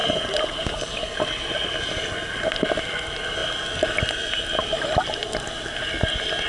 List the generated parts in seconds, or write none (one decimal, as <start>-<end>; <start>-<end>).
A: none